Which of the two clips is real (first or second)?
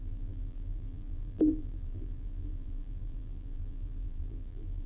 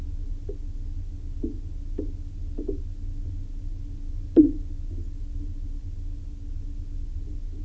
second